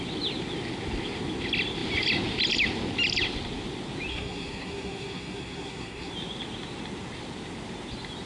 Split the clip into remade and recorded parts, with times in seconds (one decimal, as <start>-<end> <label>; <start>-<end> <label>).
0.0-4.1 recorded; 4.1-6.1 remade; 6.1-8.3 recorded